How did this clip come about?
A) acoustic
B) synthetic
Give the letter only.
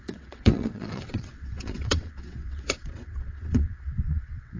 B